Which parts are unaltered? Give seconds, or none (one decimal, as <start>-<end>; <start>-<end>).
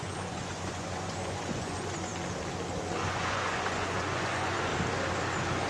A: 2.1-3.1; 4.7-5.7